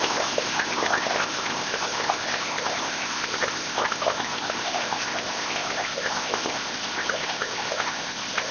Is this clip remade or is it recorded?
remade